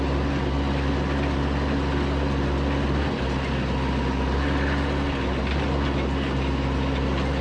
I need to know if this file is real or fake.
real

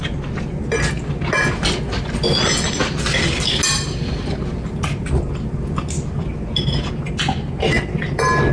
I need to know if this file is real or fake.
real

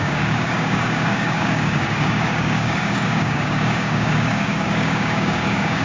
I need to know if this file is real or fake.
fake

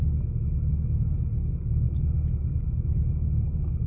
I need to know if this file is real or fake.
real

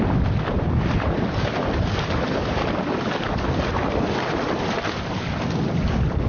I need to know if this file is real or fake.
real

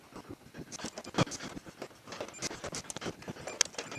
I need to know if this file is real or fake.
real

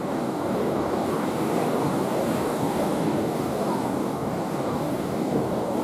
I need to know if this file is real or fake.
fake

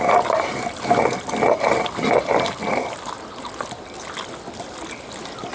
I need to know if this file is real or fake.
real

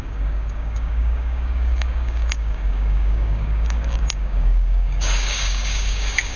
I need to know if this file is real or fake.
fake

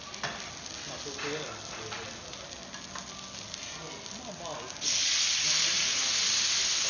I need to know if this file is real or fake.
real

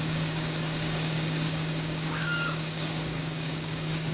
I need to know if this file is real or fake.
fake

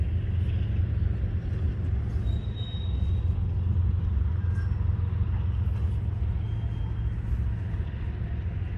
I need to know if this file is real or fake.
real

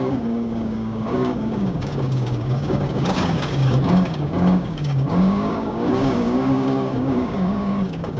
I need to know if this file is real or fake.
fake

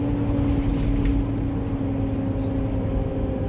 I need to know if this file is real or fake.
real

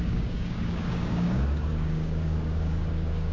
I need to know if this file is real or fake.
fake